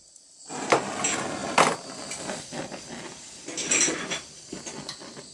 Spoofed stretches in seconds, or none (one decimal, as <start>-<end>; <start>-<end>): 1.4-4.6